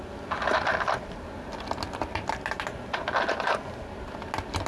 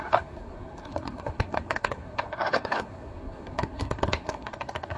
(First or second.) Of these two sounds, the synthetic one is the second